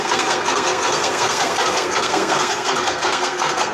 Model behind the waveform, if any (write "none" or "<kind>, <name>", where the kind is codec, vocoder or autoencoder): codec, SNAC